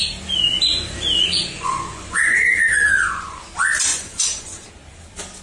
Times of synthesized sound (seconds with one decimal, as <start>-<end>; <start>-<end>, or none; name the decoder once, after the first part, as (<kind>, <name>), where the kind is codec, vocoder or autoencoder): 0.7-3.4 (vocoder, Vocos); 3.9-4.7